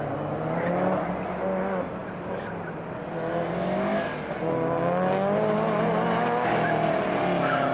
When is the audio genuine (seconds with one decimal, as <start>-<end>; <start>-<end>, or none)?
0.0-7.7